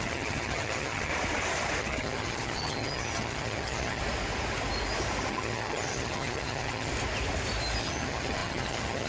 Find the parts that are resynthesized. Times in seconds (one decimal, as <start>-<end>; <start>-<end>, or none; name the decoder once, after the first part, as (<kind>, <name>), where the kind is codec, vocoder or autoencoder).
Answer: 0.0-1.1 (vocoder, HiFi-GAN); 1.8-4.0; 5.3-6.9; 7.8-9.1